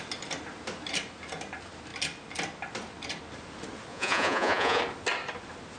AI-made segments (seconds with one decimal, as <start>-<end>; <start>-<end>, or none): 3.9-4.8